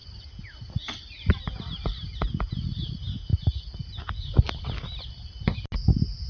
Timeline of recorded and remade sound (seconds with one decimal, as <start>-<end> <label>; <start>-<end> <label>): 0.0-6.3 recorded